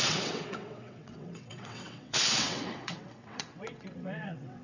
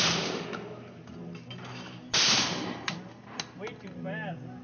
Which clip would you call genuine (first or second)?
second